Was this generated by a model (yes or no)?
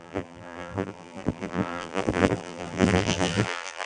yes